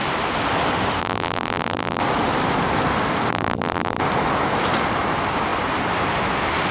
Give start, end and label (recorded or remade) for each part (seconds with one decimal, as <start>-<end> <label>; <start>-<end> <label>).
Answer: 0.0-1.0 recorded; 1.0-2.0 remade; 2.0-3.3 recorded; 3.3-4.0 remade; 4.0-6.7 recorded